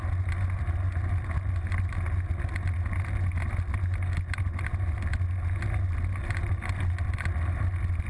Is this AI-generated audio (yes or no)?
no